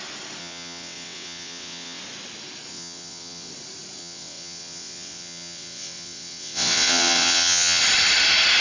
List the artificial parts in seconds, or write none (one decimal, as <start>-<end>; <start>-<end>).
0.4-2.0; 2.7-3.5; 4.0-7.8